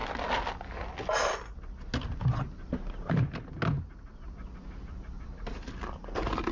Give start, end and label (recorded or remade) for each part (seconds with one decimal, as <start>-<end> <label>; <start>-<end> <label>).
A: 0.0-6.5 recorded